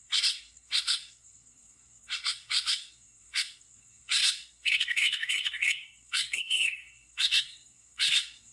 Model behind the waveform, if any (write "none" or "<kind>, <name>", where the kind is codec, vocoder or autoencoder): codec, SNAC